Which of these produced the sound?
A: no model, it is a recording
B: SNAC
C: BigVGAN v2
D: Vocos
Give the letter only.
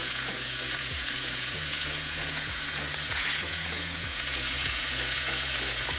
D